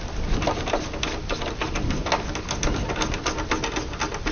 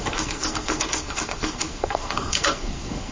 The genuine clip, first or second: first